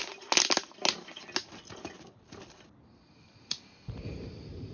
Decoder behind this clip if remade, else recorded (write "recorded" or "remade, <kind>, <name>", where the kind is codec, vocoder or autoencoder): recorded